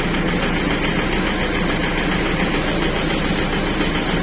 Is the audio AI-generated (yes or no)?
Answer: no